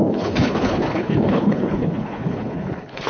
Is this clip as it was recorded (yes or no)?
no